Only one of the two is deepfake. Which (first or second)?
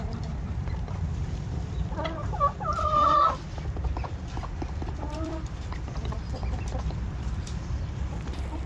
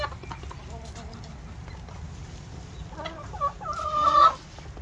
first